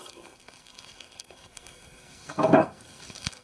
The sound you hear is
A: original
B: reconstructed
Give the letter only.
B